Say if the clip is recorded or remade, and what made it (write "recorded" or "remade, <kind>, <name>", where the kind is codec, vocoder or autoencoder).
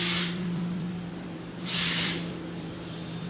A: remade, vocoder, BigVGAN v2